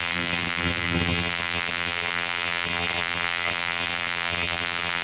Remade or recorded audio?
remade